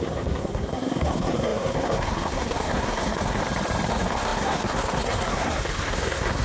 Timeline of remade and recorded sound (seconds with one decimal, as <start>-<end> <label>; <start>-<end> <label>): 0.0-3.4 remade; 3.4-3.9 recorded; 3.9-6.4 remade